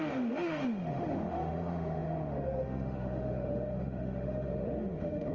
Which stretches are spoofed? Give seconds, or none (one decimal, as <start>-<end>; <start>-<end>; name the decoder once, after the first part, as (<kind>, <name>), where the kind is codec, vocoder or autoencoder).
0.0-5.3 (autoencoder, DAC-VAE)